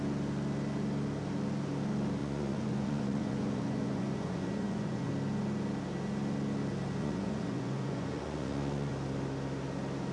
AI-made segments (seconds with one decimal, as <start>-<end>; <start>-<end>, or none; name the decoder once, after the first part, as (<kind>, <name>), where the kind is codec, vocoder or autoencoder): 2.2-5.1 (vocoder, Vocos); 7.0-8.9